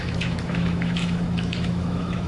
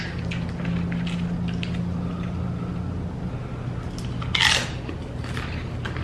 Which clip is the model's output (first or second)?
first